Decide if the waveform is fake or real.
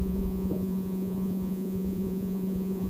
fake